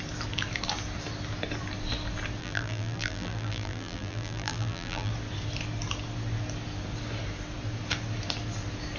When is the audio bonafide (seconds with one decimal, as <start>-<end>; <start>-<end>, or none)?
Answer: 0.0-2.4; 5.1-9.0